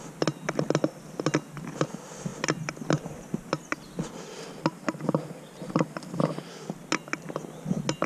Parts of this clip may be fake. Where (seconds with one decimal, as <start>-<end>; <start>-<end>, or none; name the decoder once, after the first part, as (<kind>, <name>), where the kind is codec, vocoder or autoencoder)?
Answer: none